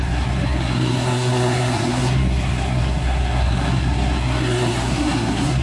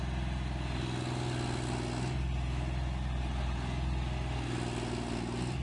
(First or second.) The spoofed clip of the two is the first